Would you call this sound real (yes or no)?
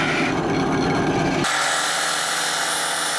yes